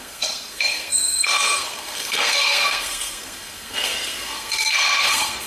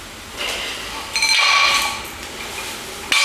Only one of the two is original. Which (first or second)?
second